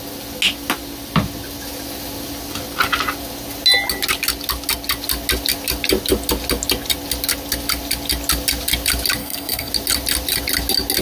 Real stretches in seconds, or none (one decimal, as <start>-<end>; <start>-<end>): 0.0-9.2; 9.7-11.0